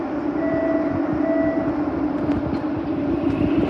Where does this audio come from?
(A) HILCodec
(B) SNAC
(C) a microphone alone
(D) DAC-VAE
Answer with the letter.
C